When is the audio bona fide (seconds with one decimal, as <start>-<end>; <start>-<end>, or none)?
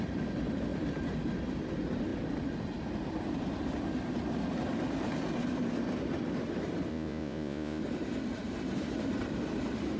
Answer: 0.0-6.9; 7.8-10.0